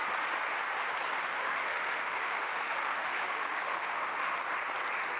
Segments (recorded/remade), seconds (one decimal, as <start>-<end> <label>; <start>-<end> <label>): 0.0-1.3 recorded; 1.3-4.4 remade; 4.4-5.2 recorded

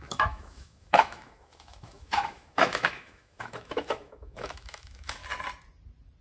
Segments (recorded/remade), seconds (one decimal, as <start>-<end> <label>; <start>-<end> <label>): 0.0-5.2 remade; 5.2-6.2 recorded

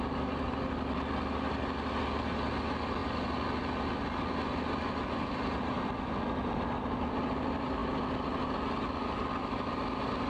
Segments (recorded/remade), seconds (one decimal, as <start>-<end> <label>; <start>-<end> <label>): 0.0-10.3 recorded

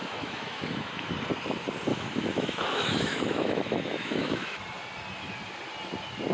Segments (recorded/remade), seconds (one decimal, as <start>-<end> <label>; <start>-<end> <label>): 0.0-1.1 remade; 1.1-1.9 recorded; 1.9-4.6 remade; 4.6-6.3 recorded